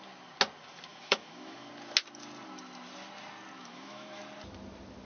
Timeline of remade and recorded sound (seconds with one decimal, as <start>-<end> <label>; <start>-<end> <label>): 0.0-0.9 recorded; 0.9-1.7 remade; 1.7-3.6 recorded; 3.6-4.2 remade; 4.2-5.1 recorded